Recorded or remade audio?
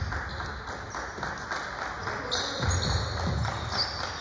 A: recorded